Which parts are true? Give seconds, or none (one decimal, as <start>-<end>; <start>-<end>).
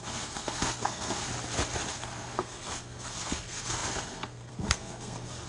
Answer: 1.3-1.9